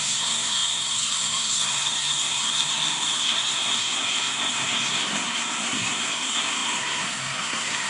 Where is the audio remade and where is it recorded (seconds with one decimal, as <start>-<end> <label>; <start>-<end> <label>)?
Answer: 0.0-7.9 remade

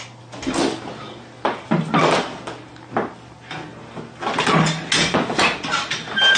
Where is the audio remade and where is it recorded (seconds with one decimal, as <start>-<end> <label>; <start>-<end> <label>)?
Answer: 0.0-6.4 recorded

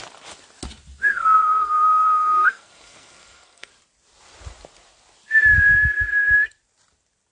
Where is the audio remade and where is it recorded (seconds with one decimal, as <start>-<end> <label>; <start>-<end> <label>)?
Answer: 0.0-1.1 recorded; 1.1-3.7 remade; 3.7-7.3 recorded

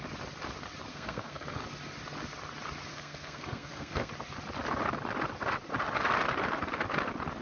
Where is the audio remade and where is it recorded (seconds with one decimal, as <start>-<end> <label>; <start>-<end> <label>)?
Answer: 0.0-0.9 recorded; 0.9-1.6 remade; 1.6-2.9 recorded; 2.9-4.1 remade; 4.1-7.4 recorded

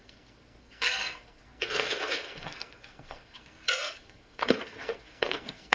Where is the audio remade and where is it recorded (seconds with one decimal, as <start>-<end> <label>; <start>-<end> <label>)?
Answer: 0.0-5.7 remade

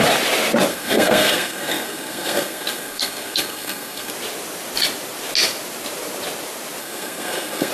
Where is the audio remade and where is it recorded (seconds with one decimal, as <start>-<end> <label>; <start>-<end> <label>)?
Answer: 0.0-0.7 recorded; 0.7-4.1 remade; 4.1-6.8 recorded; 6.8-7.7 remade

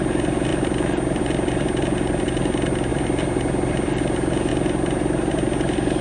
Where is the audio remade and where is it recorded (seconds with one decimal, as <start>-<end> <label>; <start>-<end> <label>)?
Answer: 0.0-6.0 recorded

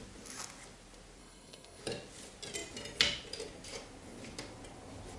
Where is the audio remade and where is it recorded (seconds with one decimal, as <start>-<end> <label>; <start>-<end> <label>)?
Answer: 0.0-1.2 recorded; 1.2-1.8 remade; 1.8-5.2 recorded